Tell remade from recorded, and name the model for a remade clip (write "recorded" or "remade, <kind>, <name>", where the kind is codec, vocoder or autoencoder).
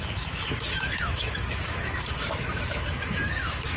remade, autoencoder, DAC-VAE